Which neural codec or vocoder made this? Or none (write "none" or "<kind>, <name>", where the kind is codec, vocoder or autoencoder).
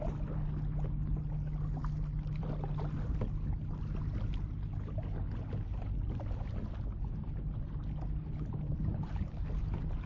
none